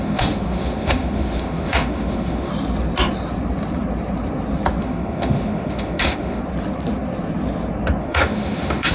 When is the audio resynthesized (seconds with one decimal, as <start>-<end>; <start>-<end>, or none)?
0.0-2.5; 4.8-6.4; 8.0-8.9